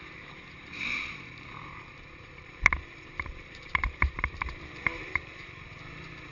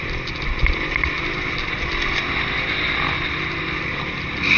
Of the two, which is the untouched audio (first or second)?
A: second